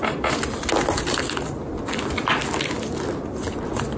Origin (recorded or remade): recorded